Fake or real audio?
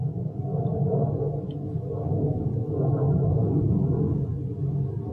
real